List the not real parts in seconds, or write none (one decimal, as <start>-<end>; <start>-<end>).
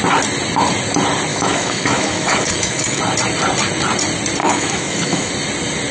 1.3-3.0; 4.4-5.3